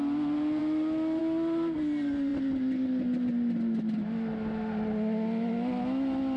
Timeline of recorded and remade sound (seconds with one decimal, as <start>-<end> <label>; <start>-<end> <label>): 0.0-6.4 recorded